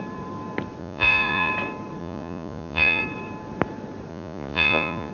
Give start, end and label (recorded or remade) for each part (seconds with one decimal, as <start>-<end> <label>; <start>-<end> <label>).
0.0-0.8 recorded; 0.8-1.5 remade; 1.5-2.0 recorded; 2.0-3.0 remade; 3.0-4.1 recorded; 4.1-5.1 remade

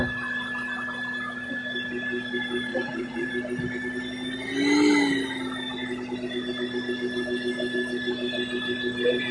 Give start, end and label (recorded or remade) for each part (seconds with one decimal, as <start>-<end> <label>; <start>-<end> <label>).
0.0-2.7 recorded; 2.7-3.3 remade; 3.3-9.3 recorded

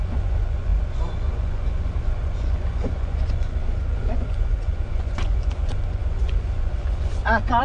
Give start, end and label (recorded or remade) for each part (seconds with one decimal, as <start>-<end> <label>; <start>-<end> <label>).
0.0-7.6 remade

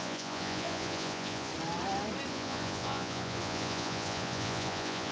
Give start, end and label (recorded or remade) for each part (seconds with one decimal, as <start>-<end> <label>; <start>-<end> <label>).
0.0-1.5 remade; 1.5-2.3 recorded; 2.3-5.1 remade

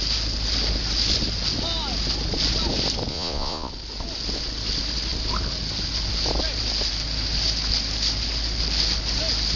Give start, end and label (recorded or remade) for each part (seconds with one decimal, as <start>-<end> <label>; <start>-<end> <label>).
0.0-3.1 recorded; 3.1-3.7 remade; 3.7-9.6 recorded